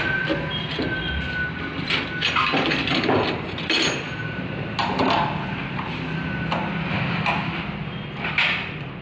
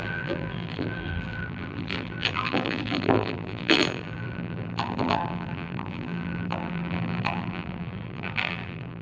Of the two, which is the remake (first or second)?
second